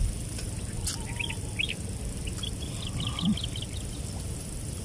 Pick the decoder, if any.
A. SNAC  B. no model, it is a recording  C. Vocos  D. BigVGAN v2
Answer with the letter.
B